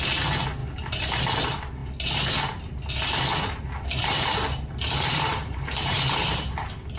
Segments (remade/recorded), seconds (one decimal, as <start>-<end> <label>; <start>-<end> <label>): 0.0-0.6 recorded; 0.6-1.2 remade; 1.2-3.9 recorded; 3.9-6.6 remade; 6.6-7.0 recorded